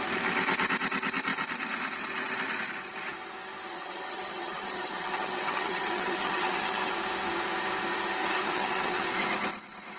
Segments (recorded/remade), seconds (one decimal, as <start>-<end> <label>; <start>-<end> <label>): 0.0-3.7 recorded; 3.7-6.9 remade; 6.9-8.2 recorded; 8.2-9.0 remade; 9.0-10.0 recorded